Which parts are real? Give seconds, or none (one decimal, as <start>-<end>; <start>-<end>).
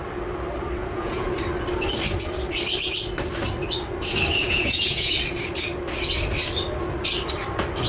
0.0-0.8; 1.3-4.4; 5.1-7.9